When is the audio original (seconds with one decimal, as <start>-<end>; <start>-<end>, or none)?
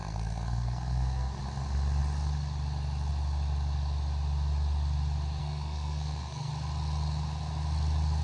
1.4-5.4; 6.5-8.2